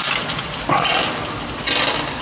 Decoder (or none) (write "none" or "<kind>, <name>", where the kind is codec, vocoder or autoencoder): none